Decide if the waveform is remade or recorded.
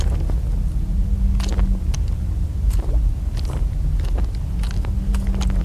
recorded